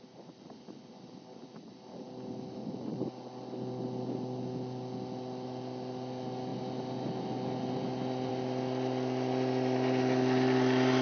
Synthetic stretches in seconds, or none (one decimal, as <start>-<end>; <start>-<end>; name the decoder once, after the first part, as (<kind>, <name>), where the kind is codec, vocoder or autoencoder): none

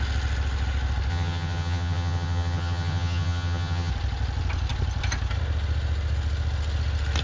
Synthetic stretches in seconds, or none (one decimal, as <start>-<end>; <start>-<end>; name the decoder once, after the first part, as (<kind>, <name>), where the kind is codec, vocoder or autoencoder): 1.1-3.9 (vocoder, HiFi-GAN)

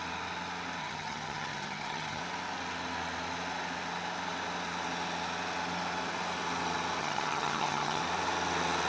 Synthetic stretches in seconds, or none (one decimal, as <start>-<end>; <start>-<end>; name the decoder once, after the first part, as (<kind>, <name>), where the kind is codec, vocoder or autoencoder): 0.8-2.2 (vocoder, HiFi-GAN); 7.0-8.0

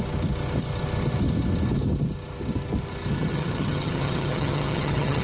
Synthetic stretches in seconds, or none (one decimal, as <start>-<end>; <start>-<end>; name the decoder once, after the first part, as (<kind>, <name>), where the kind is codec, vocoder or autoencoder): 3.1-5.2 (vocoder, HiFi-GAN)

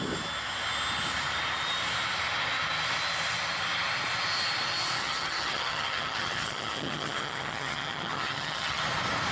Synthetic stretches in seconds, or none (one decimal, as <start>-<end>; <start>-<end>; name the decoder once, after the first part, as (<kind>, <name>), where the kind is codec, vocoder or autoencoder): 5.0-8.8 (vocoder, HiFi-GAN)

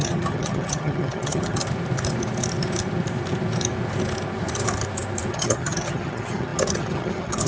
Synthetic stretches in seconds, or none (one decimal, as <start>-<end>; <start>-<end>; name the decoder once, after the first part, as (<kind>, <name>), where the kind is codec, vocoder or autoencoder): 0.0-1.6 (vocoder, HiFi-GAN); 5.3-7.5

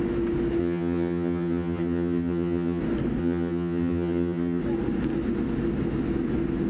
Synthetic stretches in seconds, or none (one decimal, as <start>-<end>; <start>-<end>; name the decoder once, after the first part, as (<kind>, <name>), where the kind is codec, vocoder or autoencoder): 0.6-2.8 (vocoder, HiFi-GAN); 3.2-4.6